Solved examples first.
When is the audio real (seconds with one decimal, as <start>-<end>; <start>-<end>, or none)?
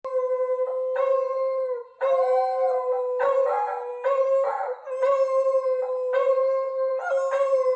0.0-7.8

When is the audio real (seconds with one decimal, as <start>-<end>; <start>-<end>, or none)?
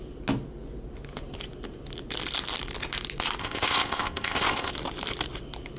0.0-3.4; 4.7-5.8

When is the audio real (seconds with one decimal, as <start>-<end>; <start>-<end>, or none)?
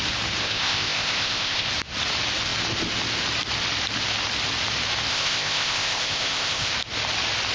0.0-0.4; 1.7-5.1; 6.7-7.5